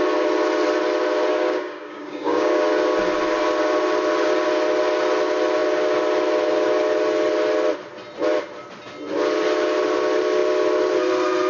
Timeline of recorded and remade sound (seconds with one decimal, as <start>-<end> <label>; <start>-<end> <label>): 0.0-1.3 recorded; 1.3-2.6 remade; 2.6-11.5 recorded